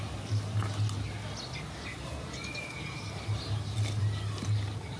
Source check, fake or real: real